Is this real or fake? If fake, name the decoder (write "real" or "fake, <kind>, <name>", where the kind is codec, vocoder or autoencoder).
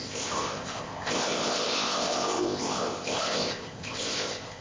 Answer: fake, codec, ZipCodec